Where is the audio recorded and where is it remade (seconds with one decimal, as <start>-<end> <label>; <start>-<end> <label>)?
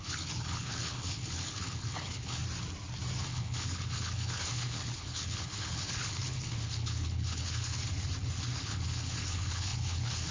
0.0-2.4 remade; 2.4-3.2 recorded; 3.2-7.8 remade; 7.8-8.6 recorded; 8.6-10.3 remade